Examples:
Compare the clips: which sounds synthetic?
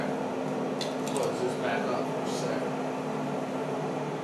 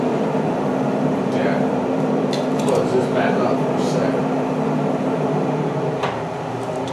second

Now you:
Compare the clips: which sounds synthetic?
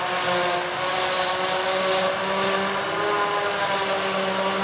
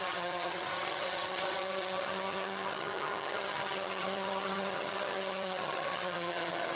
second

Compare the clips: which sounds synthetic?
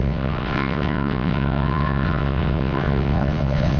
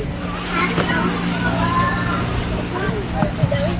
first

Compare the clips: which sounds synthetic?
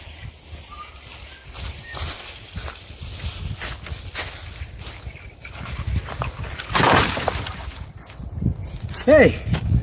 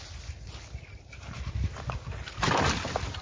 first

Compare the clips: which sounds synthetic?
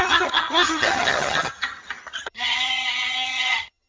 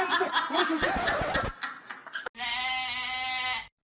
first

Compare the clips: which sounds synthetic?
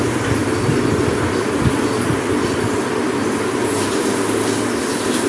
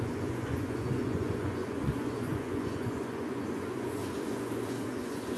second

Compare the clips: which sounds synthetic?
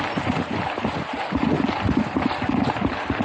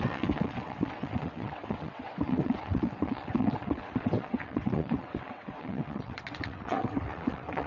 second